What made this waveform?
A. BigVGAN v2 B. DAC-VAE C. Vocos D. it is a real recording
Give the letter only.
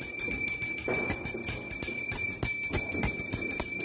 D